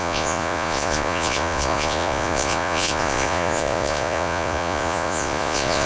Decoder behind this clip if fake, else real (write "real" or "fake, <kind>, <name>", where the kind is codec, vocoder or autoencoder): fake, vocoder, Vocos